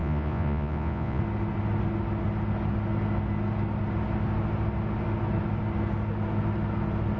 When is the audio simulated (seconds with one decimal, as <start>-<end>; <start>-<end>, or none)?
0.0-1.2